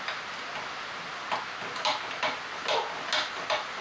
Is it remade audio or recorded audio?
recorded